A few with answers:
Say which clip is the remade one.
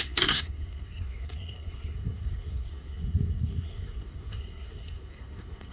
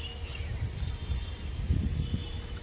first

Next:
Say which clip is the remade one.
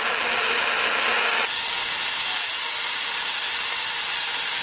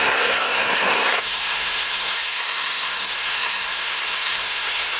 second